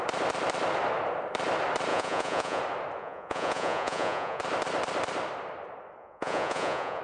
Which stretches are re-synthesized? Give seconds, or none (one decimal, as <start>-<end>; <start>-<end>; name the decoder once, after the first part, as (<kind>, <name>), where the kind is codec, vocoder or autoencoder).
1.9-2.6 (vocoder, Vocos); 3.0-4.4; 6.0-7.0